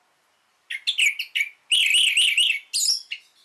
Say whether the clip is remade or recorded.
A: recorded